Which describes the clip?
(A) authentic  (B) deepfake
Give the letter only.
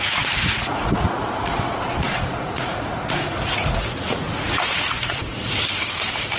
B